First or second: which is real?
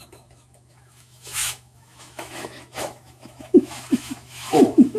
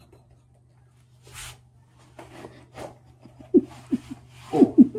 second